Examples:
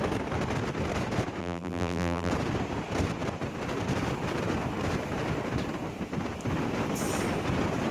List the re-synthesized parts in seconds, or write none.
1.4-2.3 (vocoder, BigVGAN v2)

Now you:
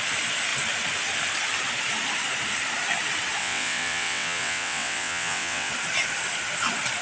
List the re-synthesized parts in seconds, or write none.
3.4-5.7 (vocoder, WaveNeXt)

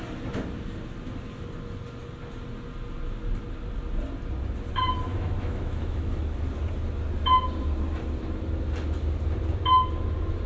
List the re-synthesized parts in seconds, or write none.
5.1-6.2 (autoencoder, DAC-VAE)

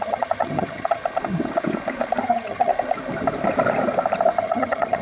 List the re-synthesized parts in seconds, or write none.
0.0-1.0 (vocoder, HiFi-GAN); 2.2-2.7; 4.4-5.0

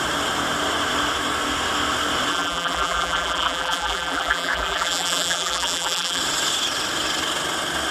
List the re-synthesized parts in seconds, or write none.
2.3-6.2 (vocoder, BigVGAN v2)